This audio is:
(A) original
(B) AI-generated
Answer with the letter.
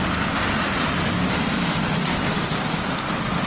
A